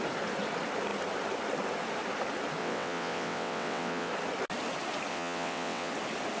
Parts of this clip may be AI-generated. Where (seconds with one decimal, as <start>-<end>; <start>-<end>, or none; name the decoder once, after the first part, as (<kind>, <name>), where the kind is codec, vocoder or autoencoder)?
2.6-4.1 (vocoder, WaveNeXt); 5.1-5.9